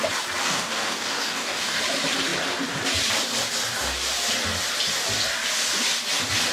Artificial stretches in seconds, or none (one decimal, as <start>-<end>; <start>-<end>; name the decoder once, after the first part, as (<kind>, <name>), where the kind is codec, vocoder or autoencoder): 0.4-1.8 (codec, DAC)

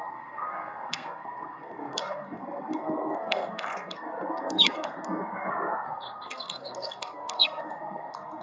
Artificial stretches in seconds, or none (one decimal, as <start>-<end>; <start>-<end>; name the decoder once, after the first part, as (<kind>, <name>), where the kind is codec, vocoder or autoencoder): 0.0-8.4 (codec, SNAC)